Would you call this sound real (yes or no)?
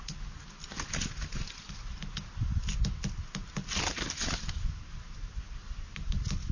yes